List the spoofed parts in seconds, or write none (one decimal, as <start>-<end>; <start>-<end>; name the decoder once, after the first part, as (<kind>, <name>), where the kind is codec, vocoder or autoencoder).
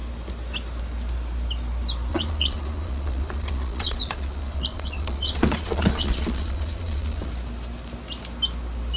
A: 2.1-7.3 (vocoder, Vocos)